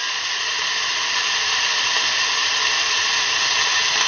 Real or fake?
real